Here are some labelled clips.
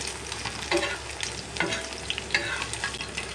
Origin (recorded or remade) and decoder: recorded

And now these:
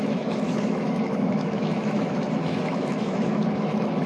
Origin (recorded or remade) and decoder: remade, autoencoder, DAC-VAE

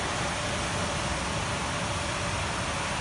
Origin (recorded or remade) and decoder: recorded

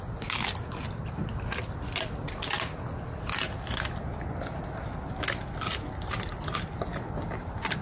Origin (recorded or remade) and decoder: recorded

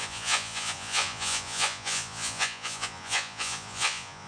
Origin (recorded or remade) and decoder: remade, vocoder, Vocos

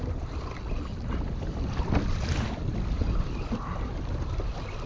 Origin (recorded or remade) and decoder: recorded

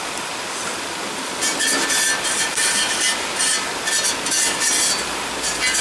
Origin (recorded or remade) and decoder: recorded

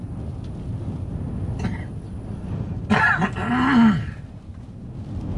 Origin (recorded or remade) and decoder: recorded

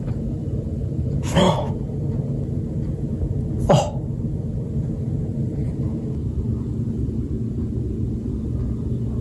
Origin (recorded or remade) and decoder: recorded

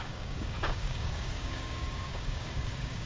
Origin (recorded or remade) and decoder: remade, codec, DAC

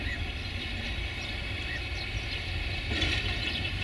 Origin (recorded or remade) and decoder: remade, vocoder, BigVGAN v2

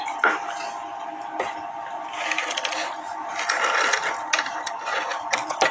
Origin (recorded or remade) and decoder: recorded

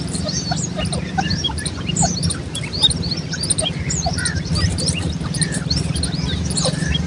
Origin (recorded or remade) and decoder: remade, vocoder, BigVGAN v2